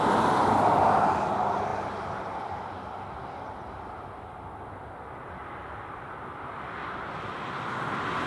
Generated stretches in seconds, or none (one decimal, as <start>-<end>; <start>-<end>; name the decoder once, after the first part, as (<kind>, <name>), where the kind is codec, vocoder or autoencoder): none